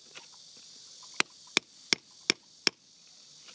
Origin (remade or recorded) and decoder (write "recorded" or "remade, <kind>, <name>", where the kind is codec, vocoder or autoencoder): recorded